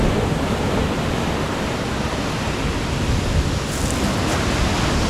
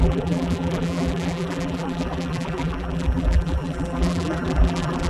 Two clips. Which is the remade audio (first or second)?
second